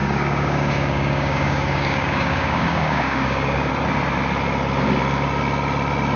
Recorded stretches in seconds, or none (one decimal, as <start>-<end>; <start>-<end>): 3.7-6.2